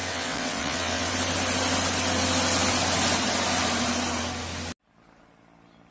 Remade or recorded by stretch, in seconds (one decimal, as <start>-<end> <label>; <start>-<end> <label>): 0.0-1.1 remade; 1.1-5.9 recorded